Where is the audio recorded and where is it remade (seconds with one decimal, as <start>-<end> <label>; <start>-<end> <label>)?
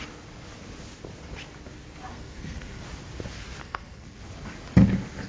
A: 0.0-2.1 recorded; 2.1-2.8 remade; 2.8-3.6 recorded; 3.6-4.2 remade; 4.2-5.3 recorded